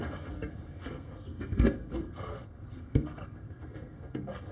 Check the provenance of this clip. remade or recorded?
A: remade